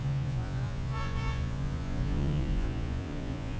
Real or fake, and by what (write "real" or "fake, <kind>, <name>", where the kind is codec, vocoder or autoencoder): fake, vocoder, Vocos